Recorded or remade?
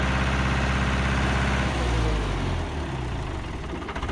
recorded